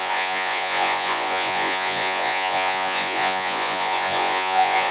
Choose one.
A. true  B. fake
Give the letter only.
B